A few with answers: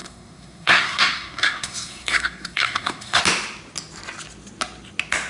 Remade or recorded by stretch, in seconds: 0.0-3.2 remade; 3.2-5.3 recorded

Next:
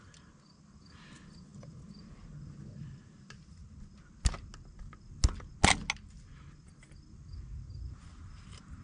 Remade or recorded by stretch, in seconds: 0.0-8.8 recorded

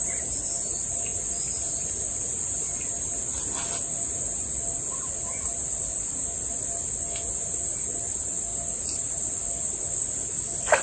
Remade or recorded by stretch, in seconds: 0.0-5.9 recorded; 5.9-7.0 remade; 7.0-8.5 recorded; 8.5-10.4 remade; 10.4-10.8 recorded